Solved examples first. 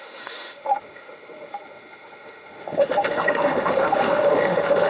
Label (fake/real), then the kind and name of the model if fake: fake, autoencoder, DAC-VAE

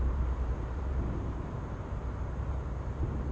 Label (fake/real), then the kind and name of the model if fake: fake, vocoder, BigVGAN v2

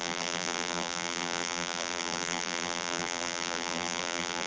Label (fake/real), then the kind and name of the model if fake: fake, vocoder, BigVGAN v2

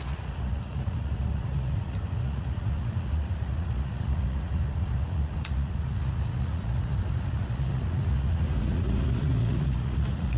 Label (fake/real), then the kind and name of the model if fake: fake, vocoder, Vocos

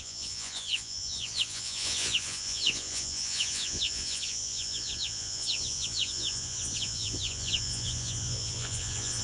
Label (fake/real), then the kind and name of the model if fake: fake, vocoder, Vocos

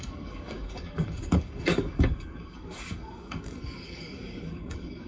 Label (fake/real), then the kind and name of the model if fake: fake, codec, DAC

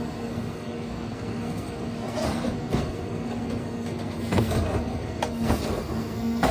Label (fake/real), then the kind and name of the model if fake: fake, codec, SNAC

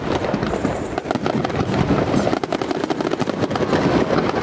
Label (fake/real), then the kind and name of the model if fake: real